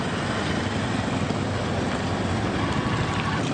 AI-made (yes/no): no